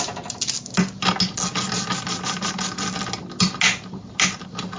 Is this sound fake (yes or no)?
no